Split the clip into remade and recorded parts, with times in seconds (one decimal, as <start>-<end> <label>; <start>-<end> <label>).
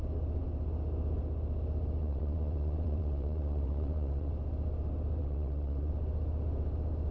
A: 0.0-2.0 recorded; 2.0-4.3 remade; 4.3-5.2 recorded; 5.2-5.9 remade; 5.9-7.1 recorded